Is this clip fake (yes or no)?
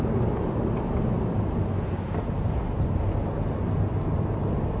no